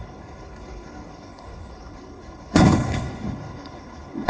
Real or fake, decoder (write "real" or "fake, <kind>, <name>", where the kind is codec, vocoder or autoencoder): fake, codec, HILCodec